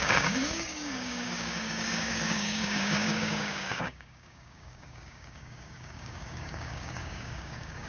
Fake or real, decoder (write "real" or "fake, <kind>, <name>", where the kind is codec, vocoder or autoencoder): fake, codec, DAC